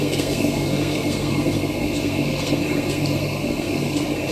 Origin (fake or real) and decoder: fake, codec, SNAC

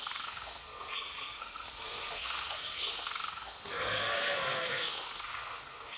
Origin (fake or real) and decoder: fake, codec, SNAC